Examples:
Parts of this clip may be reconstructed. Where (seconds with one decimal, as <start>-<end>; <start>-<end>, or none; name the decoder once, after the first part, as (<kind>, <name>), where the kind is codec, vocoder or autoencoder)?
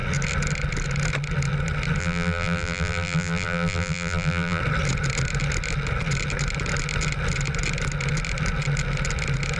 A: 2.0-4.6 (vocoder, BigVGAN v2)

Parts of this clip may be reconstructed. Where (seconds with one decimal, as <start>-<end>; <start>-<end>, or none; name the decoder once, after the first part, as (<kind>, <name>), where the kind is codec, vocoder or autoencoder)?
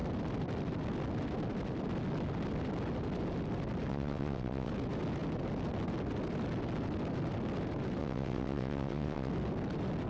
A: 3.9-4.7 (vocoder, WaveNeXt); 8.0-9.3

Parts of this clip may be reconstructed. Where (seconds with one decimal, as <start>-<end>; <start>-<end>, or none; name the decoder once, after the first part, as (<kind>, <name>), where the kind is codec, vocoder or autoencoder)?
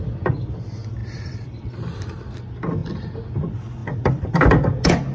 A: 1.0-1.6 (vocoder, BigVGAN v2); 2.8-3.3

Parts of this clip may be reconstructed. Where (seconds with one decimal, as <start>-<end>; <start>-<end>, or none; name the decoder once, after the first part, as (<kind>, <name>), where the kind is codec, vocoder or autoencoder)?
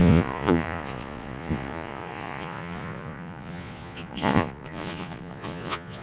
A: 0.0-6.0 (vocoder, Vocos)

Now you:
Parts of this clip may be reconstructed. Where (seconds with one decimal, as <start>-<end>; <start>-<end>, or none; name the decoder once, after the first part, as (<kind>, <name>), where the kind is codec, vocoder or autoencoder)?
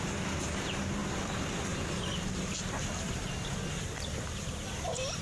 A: none